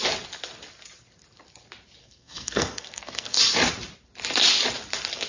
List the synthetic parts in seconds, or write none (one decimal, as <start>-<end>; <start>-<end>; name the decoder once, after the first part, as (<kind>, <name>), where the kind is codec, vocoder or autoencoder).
2.0-3.4 (codec, SNAC)